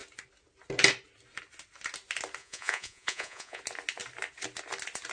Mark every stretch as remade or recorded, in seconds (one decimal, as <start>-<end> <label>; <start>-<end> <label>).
0.0-2.4 recorded; 2.4-3.6 remade; 3.6-5.1 recorded